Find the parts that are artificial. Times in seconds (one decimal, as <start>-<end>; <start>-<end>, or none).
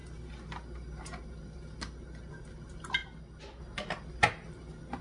none